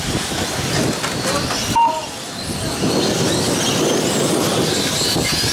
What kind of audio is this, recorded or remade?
recorded